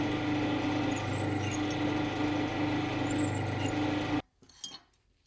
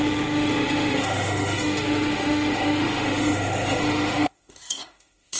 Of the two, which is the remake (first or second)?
second